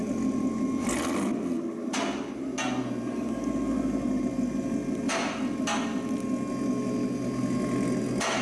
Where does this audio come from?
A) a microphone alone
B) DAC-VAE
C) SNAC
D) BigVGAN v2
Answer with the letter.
A